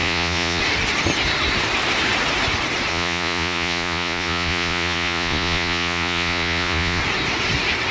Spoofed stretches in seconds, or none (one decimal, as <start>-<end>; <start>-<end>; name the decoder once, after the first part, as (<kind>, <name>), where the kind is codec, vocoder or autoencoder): 0.0-0.6 (vocoder, Vocos); 2.9-7.0